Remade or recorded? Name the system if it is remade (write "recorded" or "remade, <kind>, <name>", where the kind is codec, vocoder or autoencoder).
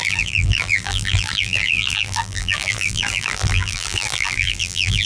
remade, vocoder, BigVGAN v2